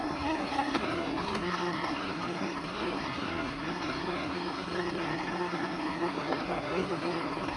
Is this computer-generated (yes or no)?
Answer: yes